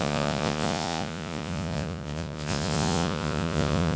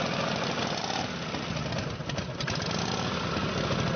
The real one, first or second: second